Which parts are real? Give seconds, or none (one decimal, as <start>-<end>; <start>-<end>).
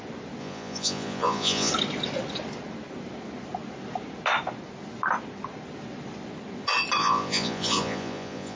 0.0-0.4; 1.7-7.0